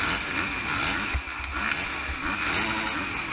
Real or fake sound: real